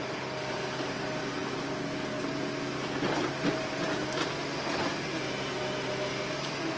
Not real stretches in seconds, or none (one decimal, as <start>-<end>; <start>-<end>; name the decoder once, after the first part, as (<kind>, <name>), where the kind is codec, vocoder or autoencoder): none